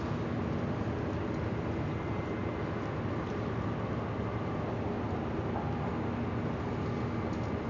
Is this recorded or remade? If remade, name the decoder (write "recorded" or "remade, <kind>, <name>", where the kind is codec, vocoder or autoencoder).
recorded